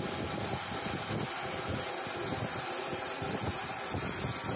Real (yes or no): yes